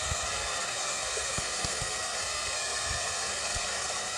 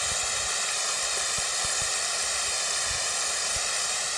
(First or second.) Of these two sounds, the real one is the second